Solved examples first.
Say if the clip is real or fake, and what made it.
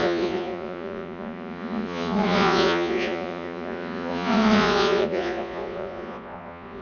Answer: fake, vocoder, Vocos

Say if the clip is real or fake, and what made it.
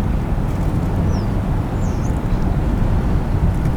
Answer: real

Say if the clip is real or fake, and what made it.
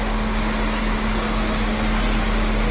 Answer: real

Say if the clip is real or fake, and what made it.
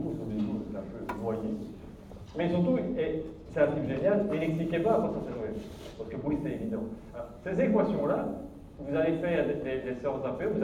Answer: real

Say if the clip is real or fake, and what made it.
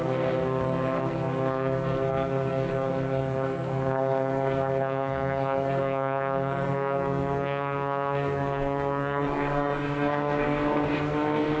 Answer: fake, codec, SNAC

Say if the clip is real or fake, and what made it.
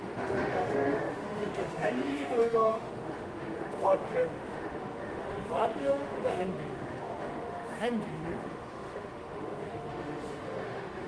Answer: fake, autoencoder, DAC-VAE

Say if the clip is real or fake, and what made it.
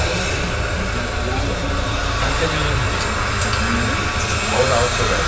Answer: real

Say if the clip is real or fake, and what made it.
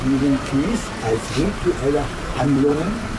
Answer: fake, vocoder, BigVGAN v2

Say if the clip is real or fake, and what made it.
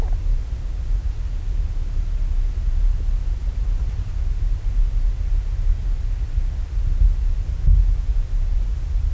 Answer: real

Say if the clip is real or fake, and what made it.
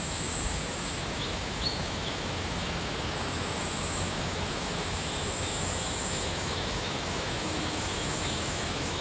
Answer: fake, autoencoder, DAC-VAE